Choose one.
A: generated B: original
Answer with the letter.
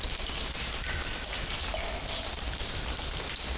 B